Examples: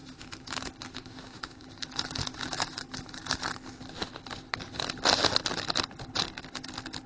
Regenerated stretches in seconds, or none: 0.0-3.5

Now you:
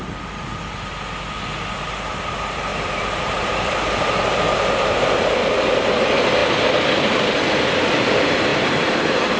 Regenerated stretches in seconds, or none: 2.7-3.7; 8.5-9.4

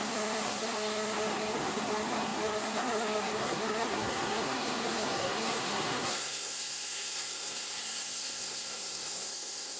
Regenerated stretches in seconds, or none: 0.0-9.8

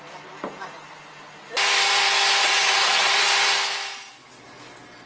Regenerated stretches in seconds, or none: 2.4-3.3

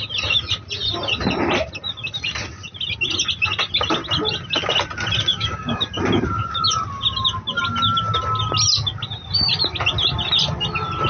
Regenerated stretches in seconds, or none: 5.3-5.8

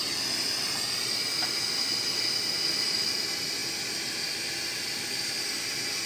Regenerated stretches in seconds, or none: 1.0-1.6

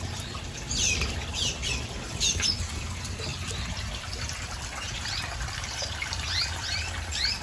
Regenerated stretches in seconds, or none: 0.0-7.4

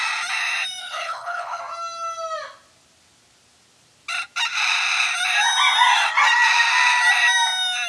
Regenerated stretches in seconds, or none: 0.8-1.6